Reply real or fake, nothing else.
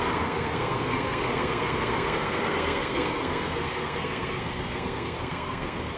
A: fake